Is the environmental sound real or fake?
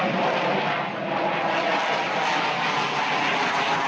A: real